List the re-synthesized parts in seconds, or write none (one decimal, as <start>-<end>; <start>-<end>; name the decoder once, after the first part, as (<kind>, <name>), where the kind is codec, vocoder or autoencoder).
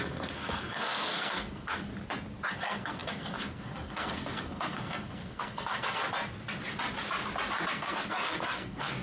0.0-1.9 (codec, SNAC); 2.5-6.0; 7.7-9.0